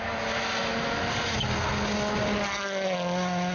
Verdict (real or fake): real